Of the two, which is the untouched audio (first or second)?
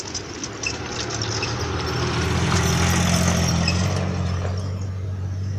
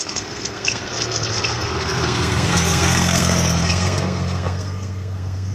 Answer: first